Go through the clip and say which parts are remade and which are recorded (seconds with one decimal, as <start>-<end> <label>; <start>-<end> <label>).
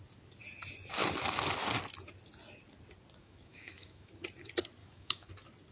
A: 0.0-3.2 recorded; 3.2-4.1 remade; 4.1-4.8 recorded; 4.8-5.3 remade; 5.3-5.7 recorded